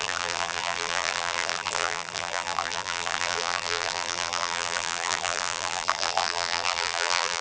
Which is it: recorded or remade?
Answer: remade